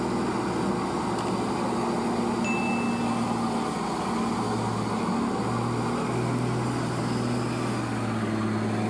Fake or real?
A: real